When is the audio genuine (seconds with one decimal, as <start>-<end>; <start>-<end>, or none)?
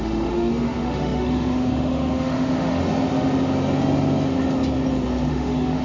2.8-5.3